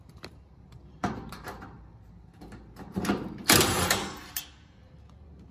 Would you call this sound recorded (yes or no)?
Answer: no